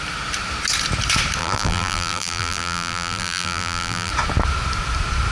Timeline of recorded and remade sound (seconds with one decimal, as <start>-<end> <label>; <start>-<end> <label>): 0.0-1.4 recorded; 1.4-4.1 remade; 4.1-5.3 recorded